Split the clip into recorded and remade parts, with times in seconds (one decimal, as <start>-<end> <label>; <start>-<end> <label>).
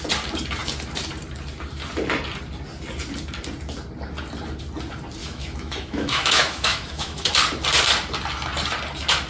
0.0-5.2 recorded; 5.2-7.3 remade; 7.3-9.3 recorded